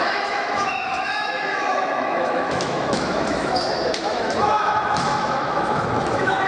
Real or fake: fake